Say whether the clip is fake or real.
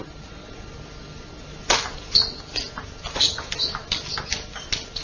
real